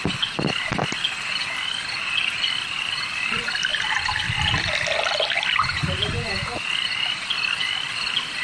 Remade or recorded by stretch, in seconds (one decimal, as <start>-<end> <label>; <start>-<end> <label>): 0.0-8.4 recorded

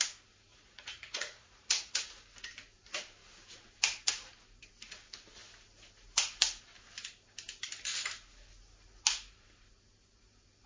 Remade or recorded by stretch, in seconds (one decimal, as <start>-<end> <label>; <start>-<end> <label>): 0.0-0.5 recorded; 0.5-2.1 remade; 2.1-10.7 recorded

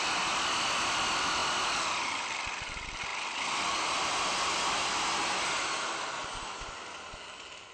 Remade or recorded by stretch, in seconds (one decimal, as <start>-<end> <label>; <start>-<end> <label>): 0.0-7.7 recorded